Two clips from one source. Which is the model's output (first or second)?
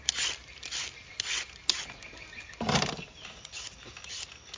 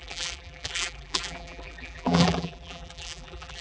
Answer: second